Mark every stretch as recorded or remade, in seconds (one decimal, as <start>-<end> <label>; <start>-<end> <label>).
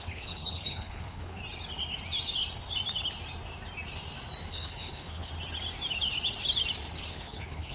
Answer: 0.0-1.4 remade; 1.4-4.5 recorded; 4.5-5.3 remade; 5.3-7.1 recorded; 7.1-7.7 remade